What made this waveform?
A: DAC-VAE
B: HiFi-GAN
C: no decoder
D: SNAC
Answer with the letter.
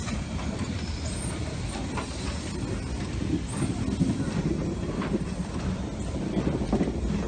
C